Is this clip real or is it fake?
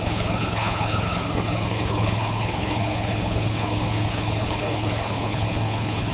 fake